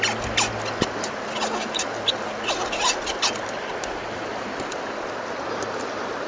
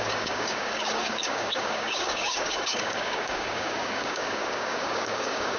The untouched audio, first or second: first